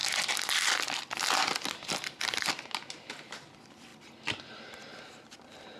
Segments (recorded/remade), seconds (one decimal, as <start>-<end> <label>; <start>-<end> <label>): 0.0-3.2 recorded; 3.2-3.9 remade; 3.9-4.5 recorded; 4.5-5.8 remade